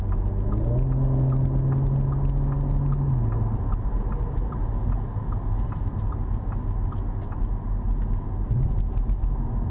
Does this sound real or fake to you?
real